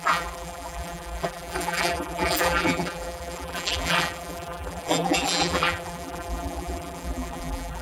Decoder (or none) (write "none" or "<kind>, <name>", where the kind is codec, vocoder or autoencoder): vocoder, BigVGAN v2